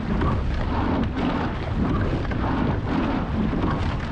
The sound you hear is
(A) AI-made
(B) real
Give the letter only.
B